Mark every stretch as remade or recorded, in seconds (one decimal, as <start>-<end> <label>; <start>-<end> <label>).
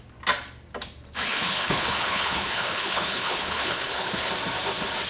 0.0-1.3 recorded; 1.3-4.3 remade; 4.3-5.1 recorded